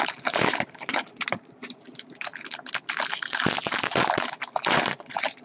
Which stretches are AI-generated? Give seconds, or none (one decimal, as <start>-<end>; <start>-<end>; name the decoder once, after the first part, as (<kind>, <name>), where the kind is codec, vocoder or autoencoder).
0.0-2.3 (vocoder, BigVGAN v2); 3.8-5.4